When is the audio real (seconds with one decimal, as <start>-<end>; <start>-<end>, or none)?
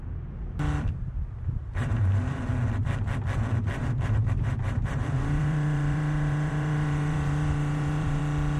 0.0-1.6; 2.4-3.8; 8.2-8.6